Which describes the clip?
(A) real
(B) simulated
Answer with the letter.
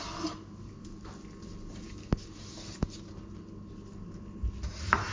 A